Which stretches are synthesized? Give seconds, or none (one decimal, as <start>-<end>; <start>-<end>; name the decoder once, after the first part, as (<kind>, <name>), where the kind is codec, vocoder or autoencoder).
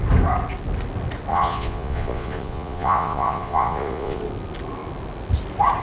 1.3-4.2 (vocoder, Vocos)